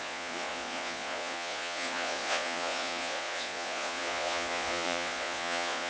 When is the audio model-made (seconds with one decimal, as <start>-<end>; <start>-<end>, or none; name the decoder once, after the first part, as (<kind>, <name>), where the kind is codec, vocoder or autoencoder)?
0.0-5.9 (vocoder, Vocos)